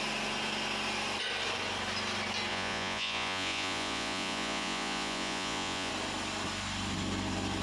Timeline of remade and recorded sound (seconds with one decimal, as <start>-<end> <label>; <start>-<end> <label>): 0.0-2.5 recorded; 2.5-5.9 remade; 5.9-7.6 recorded